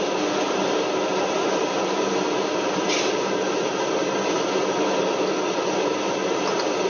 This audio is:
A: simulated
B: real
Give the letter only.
B